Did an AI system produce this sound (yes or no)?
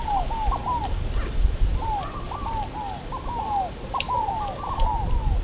no